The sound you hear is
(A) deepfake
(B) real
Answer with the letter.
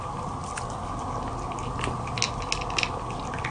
B